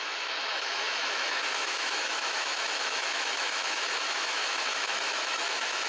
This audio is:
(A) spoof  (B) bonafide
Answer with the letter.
A